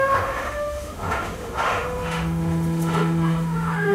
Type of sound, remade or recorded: remade